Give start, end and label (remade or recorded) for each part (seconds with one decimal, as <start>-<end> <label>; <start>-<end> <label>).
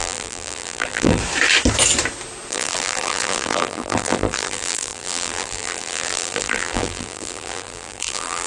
0.0-1.2 remade; 1.2-2.5 recorded; 2.5-8.5 remade